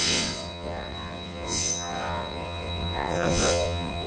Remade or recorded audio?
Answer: remade